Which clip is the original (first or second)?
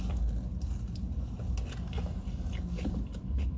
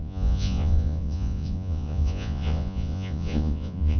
first